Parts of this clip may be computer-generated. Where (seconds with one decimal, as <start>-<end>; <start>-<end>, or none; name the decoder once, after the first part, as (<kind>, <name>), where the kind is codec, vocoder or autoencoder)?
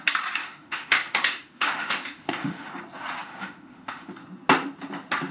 0.4-2.8 (autoencoder, DAC-VAE); 3.2-4.1